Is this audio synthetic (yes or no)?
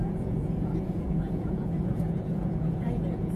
yes